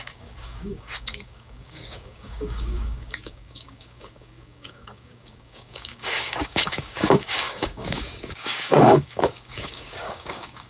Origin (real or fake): fake